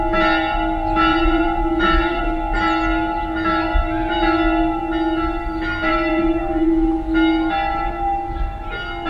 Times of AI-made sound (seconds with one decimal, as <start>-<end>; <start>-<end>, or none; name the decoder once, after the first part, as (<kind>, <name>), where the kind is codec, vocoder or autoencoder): 1.1-2.2 (vocoder, BigVGAN v2); 5.9-6.7

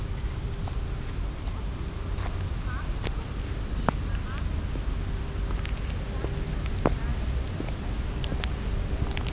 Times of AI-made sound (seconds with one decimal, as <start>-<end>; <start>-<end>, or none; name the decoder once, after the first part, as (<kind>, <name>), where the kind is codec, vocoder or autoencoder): none

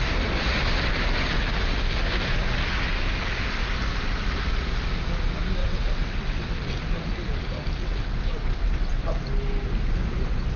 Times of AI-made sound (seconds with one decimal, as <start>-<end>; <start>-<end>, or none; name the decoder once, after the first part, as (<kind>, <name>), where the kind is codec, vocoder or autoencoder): 5.6-6.5 (vocoder, WaveNeXt); 7.8-9.0